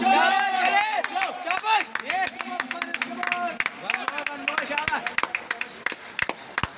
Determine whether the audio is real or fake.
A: real